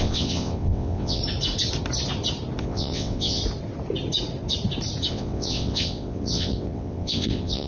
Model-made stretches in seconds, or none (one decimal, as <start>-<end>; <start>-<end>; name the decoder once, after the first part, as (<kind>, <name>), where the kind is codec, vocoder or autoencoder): 0.0-1.2 (vocoder, WaveNeXt); 2.6-3.4; 5.1-7.7